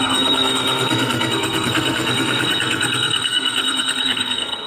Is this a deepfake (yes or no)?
yes